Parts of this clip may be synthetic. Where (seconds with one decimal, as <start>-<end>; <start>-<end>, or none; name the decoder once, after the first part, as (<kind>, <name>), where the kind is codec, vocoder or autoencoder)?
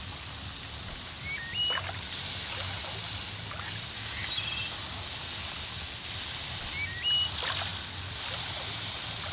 none